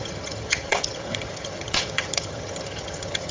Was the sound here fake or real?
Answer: fake